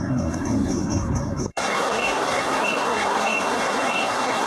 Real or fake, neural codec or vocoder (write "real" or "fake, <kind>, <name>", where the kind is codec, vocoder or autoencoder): fake, codec, SNAC